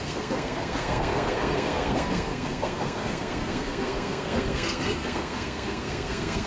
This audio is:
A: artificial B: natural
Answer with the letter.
A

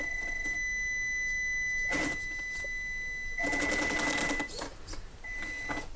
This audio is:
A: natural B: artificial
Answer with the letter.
A